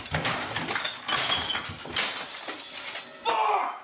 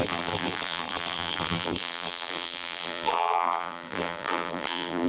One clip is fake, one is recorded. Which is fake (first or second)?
second